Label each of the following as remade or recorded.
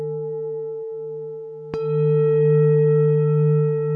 recorded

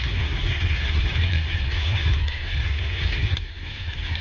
remade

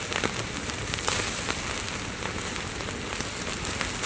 recorded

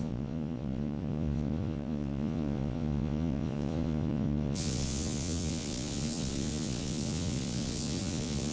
remade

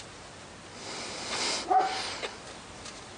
recorded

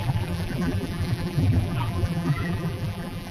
remade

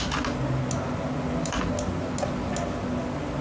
recorded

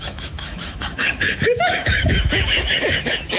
remade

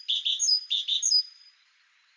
recorded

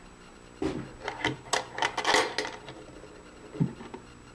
recorded